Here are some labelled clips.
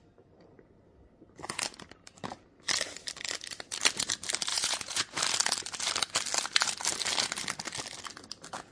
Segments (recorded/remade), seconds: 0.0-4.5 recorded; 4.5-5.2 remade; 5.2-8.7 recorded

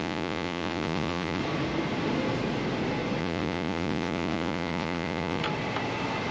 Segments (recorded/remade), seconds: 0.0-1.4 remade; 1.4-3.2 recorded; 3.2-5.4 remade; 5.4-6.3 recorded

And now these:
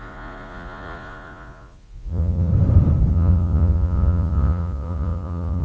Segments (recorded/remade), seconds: 0.0-2.5 remade; 2.5-3.1 recorded; 3.1-5.6 remade

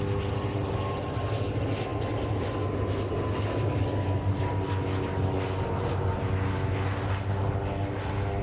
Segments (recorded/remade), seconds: 0.0-8.4 recorded

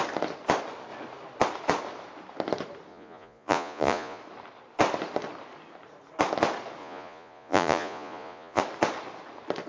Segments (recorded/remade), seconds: 0.0-2.9 recorded; 2.9-4.2 remade; 4.2-6.8 recorded; 6.8-8.6 remade; 8.6-9.7 recorded